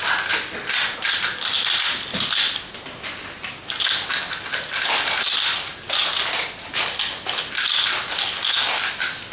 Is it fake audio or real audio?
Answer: real